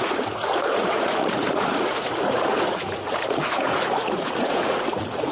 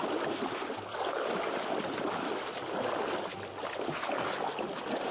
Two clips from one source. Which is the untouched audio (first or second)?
second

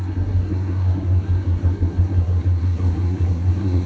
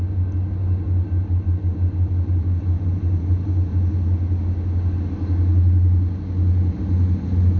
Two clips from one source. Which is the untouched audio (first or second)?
second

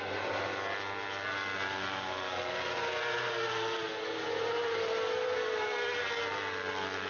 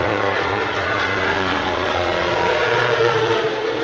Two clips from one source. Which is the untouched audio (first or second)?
first